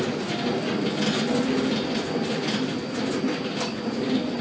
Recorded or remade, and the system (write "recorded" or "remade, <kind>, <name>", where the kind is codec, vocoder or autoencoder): recorded